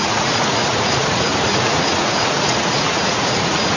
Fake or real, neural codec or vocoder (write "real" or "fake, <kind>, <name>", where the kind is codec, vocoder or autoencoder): fake, vocoder, Vocos